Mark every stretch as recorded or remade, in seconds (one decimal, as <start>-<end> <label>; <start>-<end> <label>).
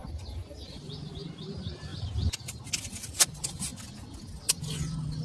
0.0-5.2 recorded